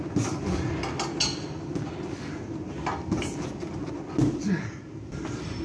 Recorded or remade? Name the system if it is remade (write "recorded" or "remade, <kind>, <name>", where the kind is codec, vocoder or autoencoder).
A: recorded